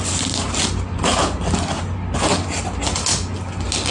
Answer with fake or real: real